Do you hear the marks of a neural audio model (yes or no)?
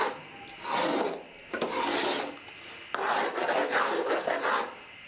no